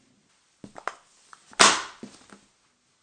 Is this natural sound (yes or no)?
yes